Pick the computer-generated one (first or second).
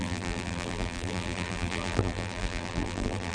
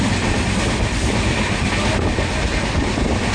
first